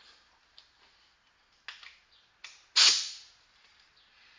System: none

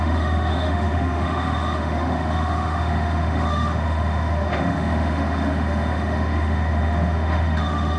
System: autoencoder, DAC-VAE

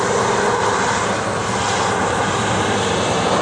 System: none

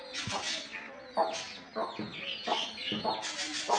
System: none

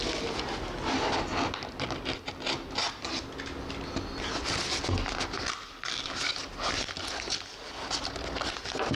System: none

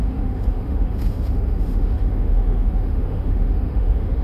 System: autoencoder, DAC-VAE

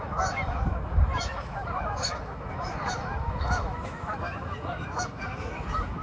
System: autoencoder, DAC-VAE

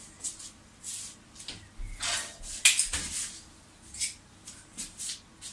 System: none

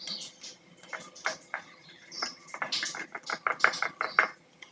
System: none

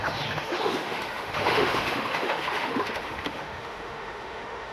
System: autoencoder, DAC-VAE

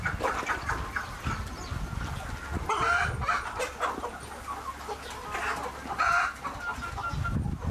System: none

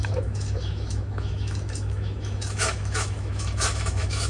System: autoencoder, DAC-VAE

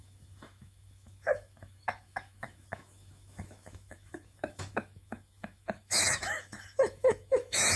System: autoencoder, DAC-VAE